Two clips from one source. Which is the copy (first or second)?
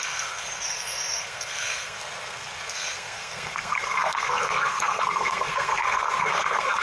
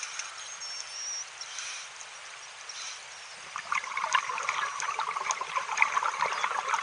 first